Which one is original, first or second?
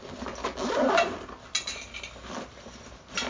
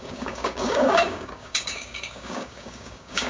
first